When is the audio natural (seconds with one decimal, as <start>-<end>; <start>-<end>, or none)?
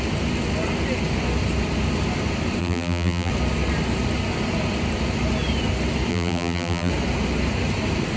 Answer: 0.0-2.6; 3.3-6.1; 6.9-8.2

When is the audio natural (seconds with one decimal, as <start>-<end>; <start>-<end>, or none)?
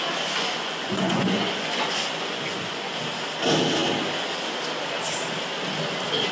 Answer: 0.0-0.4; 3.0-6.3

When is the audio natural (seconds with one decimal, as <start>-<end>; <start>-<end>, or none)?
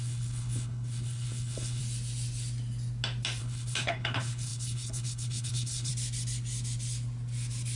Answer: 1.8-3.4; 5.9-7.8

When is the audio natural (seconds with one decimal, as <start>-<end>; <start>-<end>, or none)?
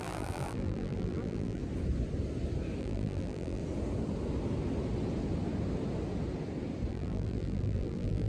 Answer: 1.6-2.8; 3.6-6.9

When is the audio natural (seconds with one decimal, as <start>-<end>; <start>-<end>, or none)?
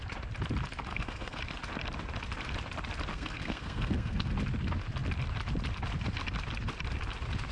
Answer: 0.0-0.9; 1.4-3.1; 4.3-7.5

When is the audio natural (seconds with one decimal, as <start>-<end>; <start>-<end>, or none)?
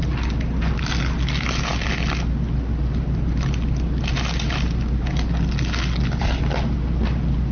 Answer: 0.0-7.5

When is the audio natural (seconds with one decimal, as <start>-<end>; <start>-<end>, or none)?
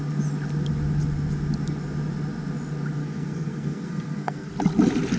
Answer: 0.0-3.0; 4.5-5.2